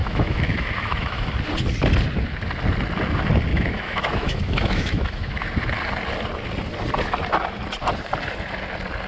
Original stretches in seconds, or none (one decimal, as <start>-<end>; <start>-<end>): 1.3-3.5; 5.4-9.1

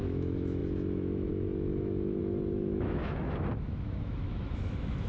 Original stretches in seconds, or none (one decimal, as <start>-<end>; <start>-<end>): none